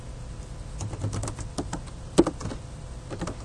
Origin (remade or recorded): recorded